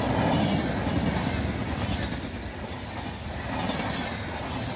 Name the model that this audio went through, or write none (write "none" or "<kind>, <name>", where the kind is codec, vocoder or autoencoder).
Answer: none